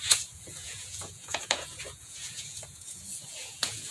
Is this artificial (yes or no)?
yes